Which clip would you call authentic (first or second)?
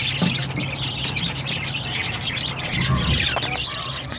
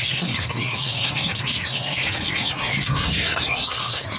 first